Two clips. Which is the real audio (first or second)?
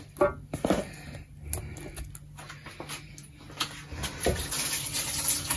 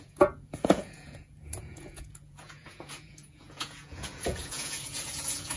first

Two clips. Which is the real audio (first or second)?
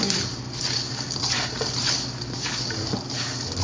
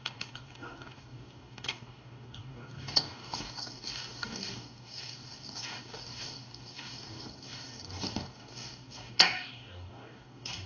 first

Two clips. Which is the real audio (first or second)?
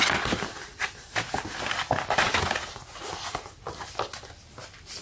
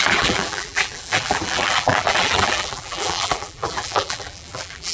first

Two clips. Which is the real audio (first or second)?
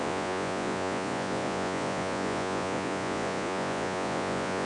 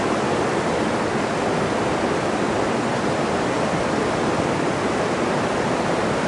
second